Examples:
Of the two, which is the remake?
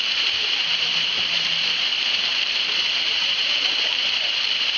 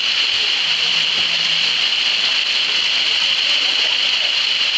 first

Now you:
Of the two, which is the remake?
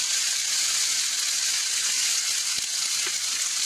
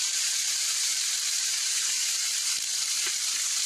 second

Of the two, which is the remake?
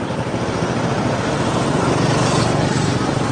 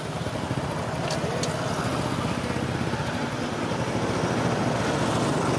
first